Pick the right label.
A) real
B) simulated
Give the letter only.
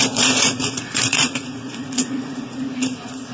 B